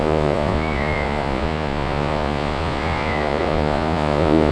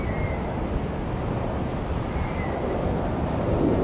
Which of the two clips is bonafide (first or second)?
second